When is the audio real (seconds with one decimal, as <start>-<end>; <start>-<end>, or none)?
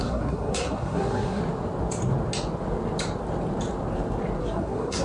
1.4-4.4